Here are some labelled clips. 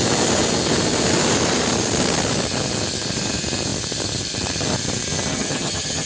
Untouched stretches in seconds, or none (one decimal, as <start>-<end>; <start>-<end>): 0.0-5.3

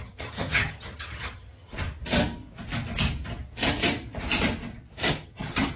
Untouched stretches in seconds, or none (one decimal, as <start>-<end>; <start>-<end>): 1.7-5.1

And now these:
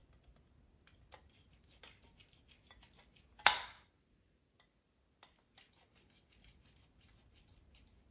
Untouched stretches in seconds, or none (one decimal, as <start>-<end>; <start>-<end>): 0.0-8.1